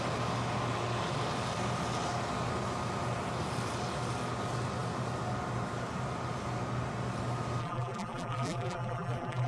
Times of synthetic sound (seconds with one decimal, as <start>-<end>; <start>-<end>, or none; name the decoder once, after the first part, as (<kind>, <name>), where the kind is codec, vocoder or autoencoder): 7.6-9.5 (vocoder, BigVGAN v2)